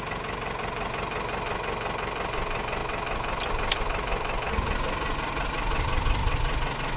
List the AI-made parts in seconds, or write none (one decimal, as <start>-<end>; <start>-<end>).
2.8-3.8; 6.2-7.0